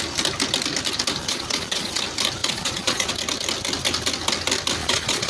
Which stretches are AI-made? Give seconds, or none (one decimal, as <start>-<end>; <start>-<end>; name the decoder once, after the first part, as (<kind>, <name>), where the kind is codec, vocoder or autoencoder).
1.2-2.0 (vocoder, Vocos); 2.4-3.1; 4.8-5.3